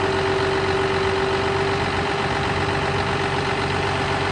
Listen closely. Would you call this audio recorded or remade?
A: recorded